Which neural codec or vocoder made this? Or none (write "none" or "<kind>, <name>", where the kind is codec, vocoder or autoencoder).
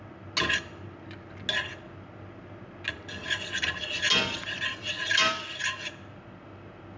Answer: none